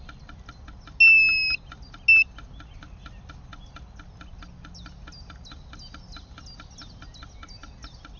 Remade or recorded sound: recorded